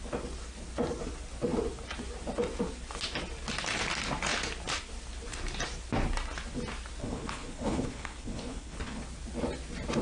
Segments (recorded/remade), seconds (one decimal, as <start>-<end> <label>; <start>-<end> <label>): 0.0-7.0 recorded; 7.0-9.0 remade; 9.0-10.0 recorded